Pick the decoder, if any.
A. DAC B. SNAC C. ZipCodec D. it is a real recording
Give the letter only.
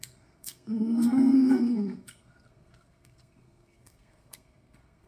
B